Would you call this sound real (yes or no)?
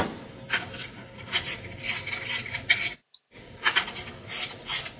yes